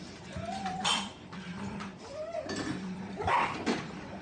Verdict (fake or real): fake